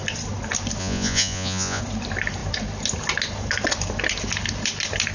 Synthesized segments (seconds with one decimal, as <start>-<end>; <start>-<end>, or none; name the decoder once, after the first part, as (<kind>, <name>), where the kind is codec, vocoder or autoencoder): 0.8-1.8 (vocoder, Vocos)